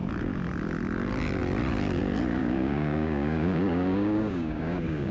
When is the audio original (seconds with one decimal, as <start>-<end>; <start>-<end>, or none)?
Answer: 0.0-2.4